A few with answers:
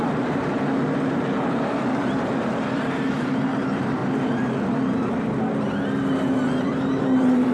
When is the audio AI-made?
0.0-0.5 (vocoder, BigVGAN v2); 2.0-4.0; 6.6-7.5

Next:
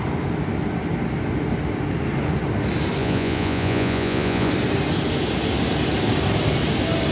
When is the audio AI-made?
3.0-4.5 (vocoder, Vocos)

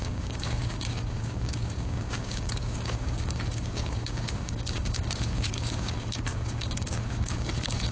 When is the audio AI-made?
0.0-7.9 (codec, DAC)

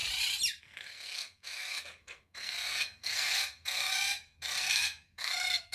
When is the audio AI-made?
0.6-5.7 (codec, SNAC)